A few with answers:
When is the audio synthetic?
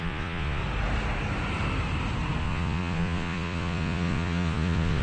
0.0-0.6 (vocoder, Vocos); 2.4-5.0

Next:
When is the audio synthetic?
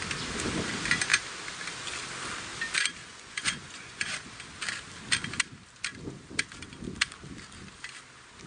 3.0-4.3 (vocoder, Vocos)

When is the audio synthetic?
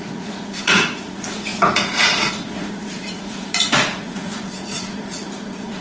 0.0-5.8 (vocoder, Vocos)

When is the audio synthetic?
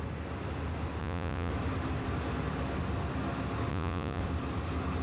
1.0-1.5 (vocoder, Vocos); 3.7-4.2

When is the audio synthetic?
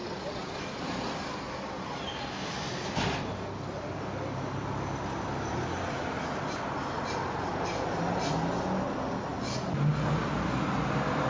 none